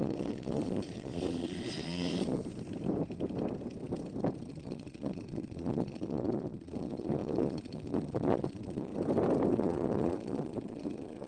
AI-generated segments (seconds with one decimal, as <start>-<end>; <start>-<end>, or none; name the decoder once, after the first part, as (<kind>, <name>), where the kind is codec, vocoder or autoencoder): 0.0-2.4 (vocoder, Vocos); 4.5-8.9; 9.5-11.3